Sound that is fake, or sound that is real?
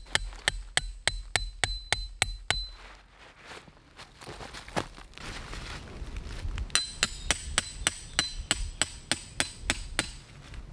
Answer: real